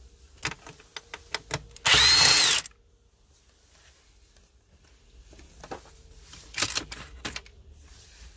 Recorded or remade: recorded